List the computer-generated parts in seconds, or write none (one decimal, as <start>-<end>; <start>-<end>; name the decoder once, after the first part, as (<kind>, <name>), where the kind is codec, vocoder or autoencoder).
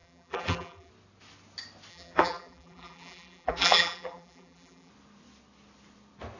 0.0-0.9 (vocoder, BigVGAN v2); 1.9-4.9